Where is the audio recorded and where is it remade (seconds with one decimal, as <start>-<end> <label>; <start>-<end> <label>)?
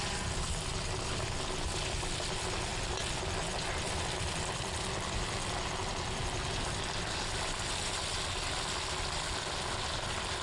0.0-10.4 recorded